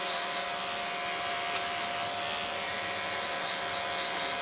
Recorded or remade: recorded